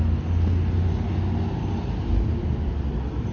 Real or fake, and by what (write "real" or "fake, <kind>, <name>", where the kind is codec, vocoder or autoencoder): real